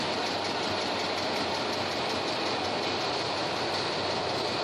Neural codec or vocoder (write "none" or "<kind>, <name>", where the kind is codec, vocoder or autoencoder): none